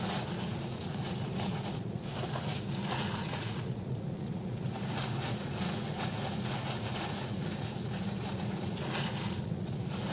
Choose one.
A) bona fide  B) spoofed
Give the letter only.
B